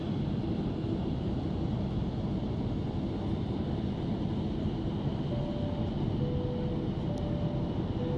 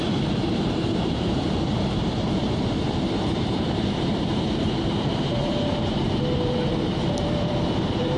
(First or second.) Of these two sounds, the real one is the first